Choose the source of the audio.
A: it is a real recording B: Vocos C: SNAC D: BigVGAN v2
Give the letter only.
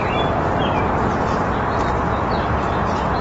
D